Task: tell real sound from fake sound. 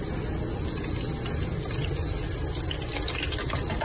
real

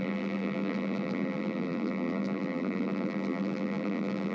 fake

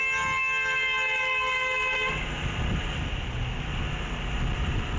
real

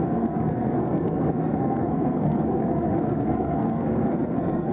fake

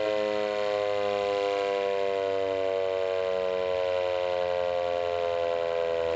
real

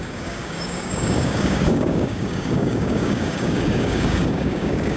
fake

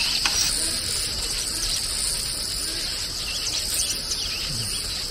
real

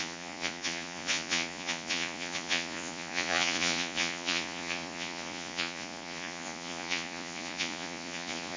fake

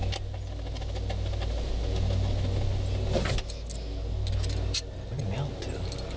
real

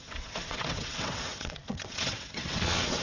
fake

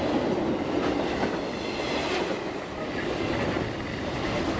real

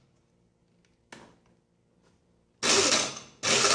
real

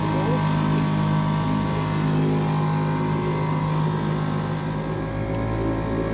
real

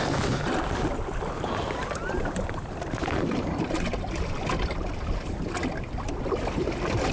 real